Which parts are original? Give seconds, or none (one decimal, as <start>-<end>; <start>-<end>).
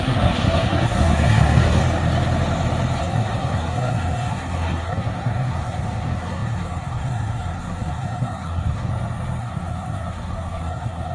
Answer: 1.8-3.0; 8.9-9.4